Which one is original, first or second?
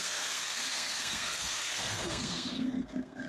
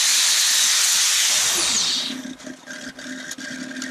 second